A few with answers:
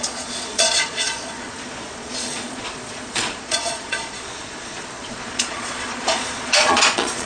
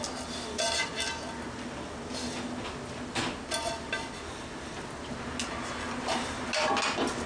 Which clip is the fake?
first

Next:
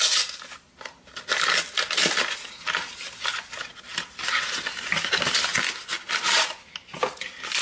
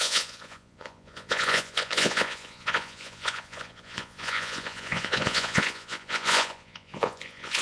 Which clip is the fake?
second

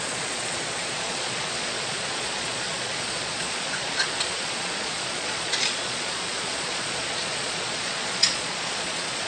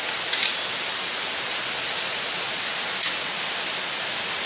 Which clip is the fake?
first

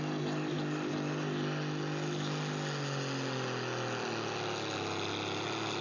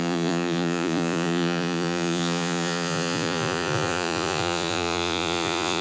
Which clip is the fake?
second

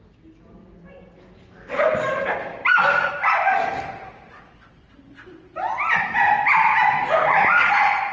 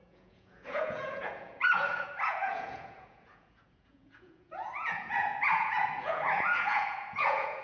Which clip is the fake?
second